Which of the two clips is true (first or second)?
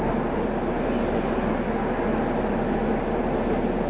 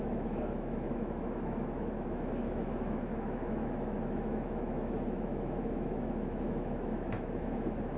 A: first